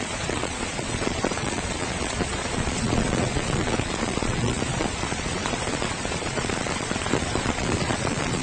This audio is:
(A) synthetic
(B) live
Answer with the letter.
A